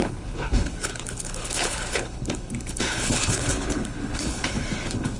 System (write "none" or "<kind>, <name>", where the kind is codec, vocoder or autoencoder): codec, HILCodec